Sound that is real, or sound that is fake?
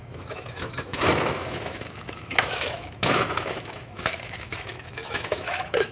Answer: fake